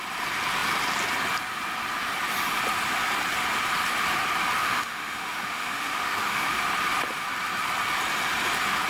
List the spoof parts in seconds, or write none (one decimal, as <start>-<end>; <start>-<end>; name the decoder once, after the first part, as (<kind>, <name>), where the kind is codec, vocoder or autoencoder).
4.6-6.6 (autoencoder, DAC-VAE)